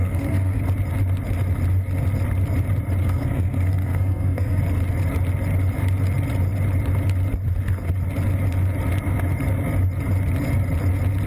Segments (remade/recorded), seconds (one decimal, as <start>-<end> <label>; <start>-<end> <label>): 0.0-0.6 remade; 0.6-3.0 recorded; 3.0-4.6 remade; 4.6-11.3 recorded